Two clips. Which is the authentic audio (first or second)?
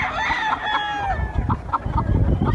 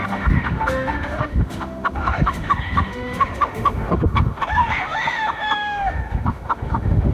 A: first